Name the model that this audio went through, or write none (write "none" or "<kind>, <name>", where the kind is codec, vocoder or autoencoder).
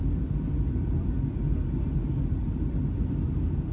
none